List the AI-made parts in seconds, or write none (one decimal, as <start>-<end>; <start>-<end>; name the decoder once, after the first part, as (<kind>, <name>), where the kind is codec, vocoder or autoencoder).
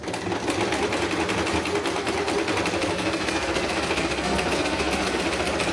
2.9-5.2 (codec, SNAC)